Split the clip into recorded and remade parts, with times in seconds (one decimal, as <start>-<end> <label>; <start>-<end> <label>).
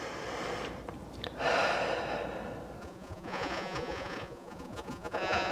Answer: 0.0-2.8 recorded; 2.8-5.5 remade